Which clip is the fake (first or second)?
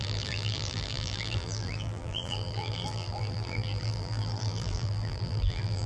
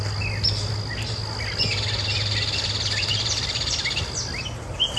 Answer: first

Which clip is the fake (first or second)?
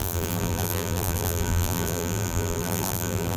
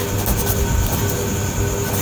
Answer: first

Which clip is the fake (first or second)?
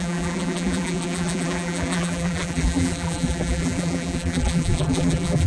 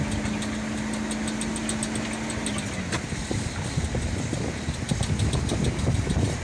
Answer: first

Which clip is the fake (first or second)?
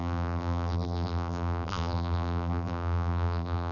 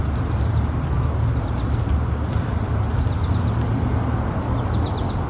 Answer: first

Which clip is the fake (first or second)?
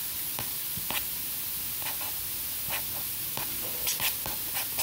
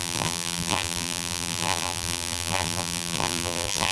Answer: second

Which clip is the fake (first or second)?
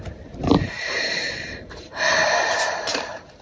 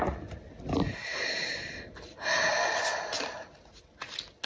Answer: first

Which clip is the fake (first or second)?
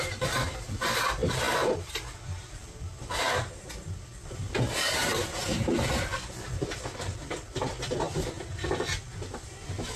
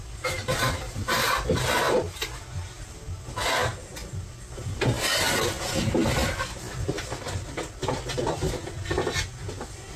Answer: first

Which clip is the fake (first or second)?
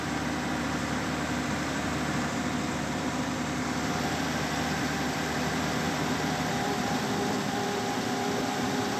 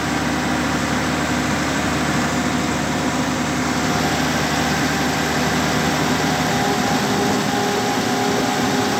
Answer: first